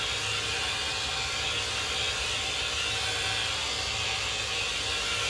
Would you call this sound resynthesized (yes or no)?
no